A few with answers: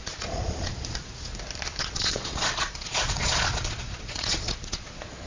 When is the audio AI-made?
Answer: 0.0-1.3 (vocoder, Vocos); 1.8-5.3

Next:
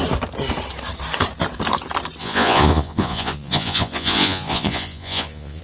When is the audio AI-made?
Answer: 2.2-5.6 (vocoder, Vocos)

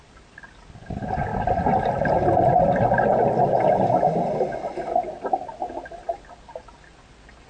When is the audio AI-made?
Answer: none

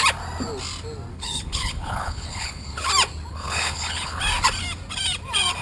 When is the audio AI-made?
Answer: 1.1-2.9 (codec, HILCodec); 3.3-4.2